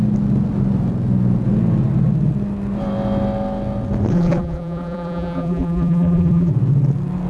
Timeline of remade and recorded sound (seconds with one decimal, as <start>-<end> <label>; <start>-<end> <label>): 0.0-4.1 recorded; 4.1-6.5 remade; 6.5-7.3 recorded